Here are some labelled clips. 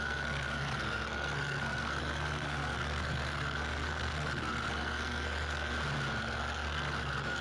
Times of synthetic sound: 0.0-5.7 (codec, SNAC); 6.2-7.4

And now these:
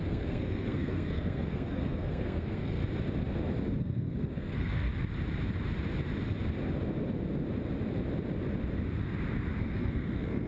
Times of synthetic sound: 0.0-2.8 (codec, SNAC); 3.8-4.9; 9.6-10.5

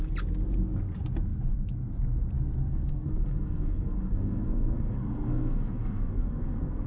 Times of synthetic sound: 2.7-6.9 (codec, SNAC)

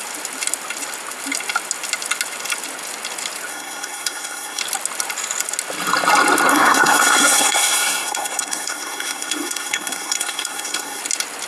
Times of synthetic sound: 3.5-4.6 (codec, SNAC); 6.5-11.0